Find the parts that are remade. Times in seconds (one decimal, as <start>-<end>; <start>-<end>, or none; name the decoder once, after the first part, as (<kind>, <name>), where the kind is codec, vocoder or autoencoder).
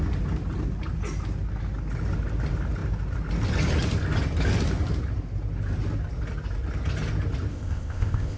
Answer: 7.5-8.4 (codec, ZipCodec)